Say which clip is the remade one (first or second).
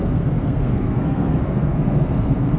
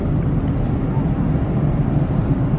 first